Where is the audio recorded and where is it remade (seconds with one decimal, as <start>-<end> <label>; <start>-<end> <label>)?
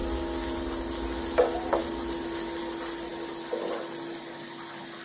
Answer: 0.0-1.8 recorded; 1.8-2.6 remade; 2.6-5.0 recorded